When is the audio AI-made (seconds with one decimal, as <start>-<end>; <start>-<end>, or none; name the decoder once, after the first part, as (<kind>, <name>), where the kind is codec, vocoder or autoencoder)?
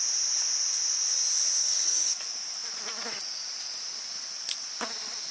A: 1.6-2.2 (codec, DAC)